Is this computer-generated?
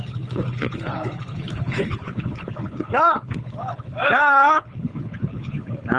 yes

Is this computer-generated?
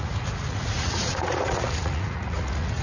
yes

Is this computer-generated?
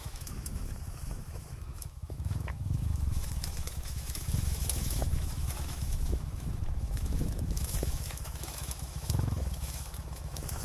yes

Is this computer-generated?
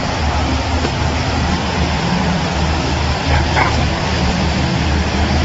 no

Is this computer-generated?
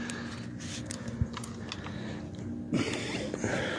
no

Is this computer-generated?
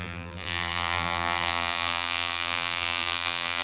yes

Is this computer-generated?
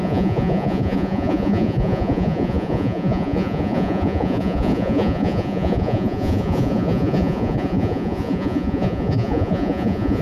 yes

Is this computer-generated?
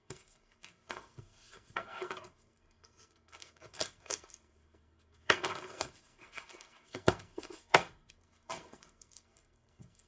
yes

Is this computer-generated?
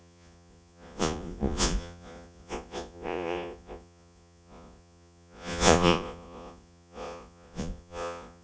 yes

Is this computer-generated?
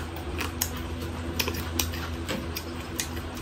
yes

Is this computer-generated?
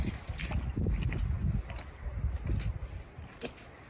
no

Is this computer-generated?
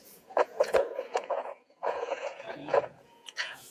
yes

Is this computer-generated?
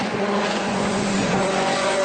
yes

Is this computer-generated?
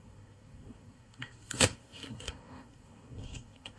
yes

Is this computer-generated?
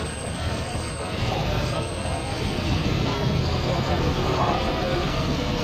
yes